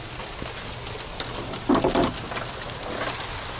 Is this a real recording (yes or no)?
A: yes